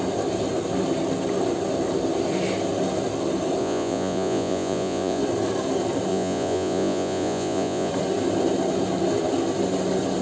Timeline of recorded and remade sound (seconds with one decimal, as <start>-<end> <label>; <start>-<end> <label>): 0.0-3.6 recorded; 3.6-5.2 remade; 5.2-6.1 recorded; 6.1-7.9 remade; 7.9-10.2 recorded